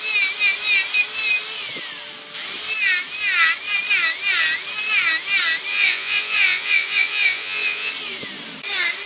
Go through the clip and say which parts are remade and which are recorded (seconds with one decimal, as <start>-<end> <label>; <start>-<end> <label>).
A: 0.0-5.7 recorded; 5.7-7.9 remade; 7.9-9.1 recorded